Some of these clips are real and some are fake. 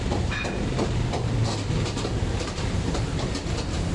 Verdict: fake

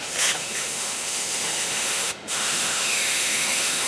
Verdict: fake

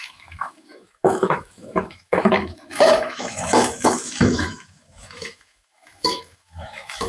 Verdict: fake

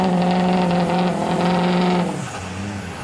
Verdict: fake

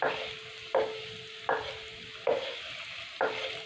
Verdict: real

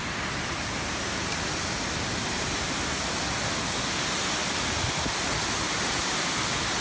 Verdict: real